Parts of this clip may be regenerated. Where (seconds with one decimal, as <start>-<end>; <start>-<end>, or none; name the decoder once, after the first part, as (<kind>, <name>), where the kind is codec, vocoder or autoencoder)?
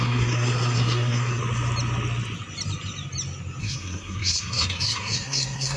0.0-1.4 (codec, SNAC); 3.6-5.8